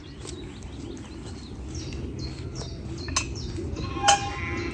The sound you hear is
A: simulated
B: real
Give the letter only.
B